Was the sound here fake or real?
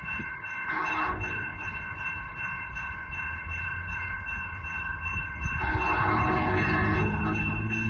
fake